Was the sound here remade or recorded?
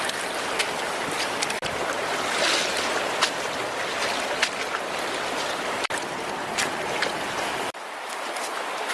recorded